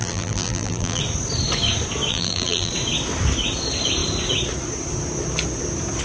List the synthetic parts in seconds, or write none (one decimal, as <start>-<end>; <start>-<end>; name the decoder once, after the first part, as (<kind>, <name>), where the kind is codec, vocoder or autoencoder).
0.0-1.0 (vocoder, BigVGAN v2); 2.1-2.7